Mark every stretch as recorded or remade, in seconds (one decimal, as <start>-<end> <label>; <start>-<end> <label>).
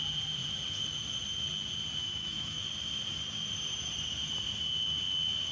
0.0-2.0 recorded; 2.0-2.6 remade; 2.6-5.5 recorded